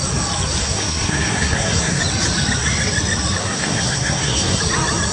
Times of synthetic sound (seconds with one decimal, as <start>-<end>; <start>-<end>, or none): 0.6-2.0; 3.4-4.6